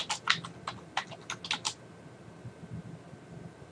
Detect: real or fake real